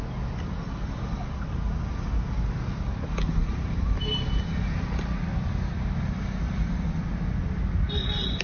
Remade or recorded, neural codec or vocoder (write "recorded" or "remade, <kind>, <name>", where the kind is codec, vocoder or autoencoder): recorded